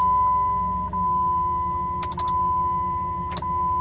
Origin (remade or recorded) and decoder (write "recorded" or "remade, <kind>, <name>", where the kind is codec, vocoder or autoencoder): recorded